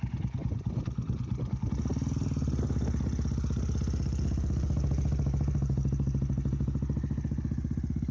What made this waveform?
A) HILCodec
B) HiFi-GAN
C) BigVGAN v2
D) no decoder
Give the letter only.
D